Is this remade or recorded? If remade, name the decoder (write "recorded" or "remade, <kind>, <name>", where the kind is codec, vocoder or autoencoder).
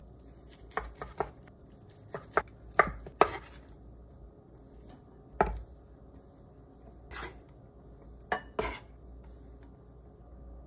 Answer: recorded